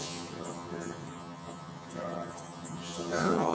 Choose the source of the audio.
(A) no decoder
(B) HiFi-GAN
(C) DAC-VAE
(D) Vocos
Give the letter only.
B